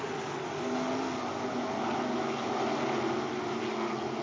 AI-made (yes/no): no